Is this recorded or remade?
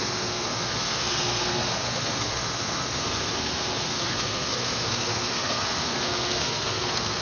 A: remade